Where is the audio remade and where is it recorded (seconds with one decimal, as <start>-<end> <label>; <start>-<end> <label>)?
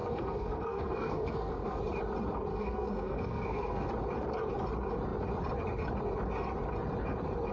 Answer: 0.0-1.8 remade; 1.8-2.5 recorded; 2.5-3.9 remade; 3.9-7.5 recorded